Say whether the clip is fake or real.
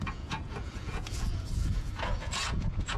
fake